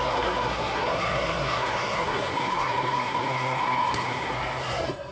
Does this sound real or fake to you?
fake